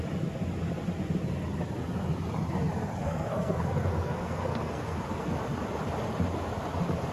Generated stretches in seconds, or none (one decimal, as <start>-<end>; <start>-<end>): 3.0-5.3

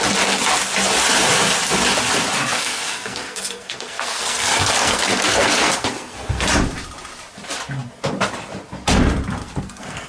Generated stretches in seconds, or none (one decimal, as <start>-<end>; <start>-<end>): 2.5-6.5; 9.4-10.1

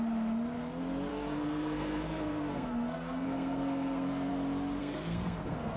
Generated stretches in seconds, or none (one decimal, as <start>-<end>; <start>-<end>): 1.1-4.3; 4.8-5.8

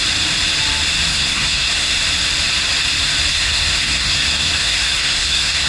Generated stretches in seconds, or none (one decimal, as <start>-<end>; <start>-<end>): 1.1-1.9; 3.3-5.7